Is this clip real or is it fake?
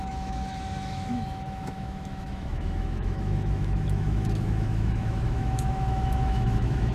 fake